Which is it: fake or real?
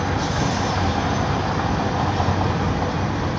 real